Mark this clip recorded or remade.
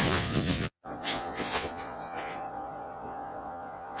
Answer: remade